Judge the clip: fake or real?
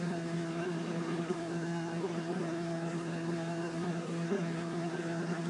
fake